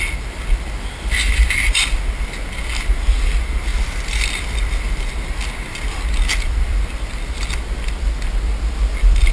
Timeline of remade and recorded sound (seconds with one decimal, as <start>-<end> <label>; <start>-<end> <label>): 0.0-9.3 recorded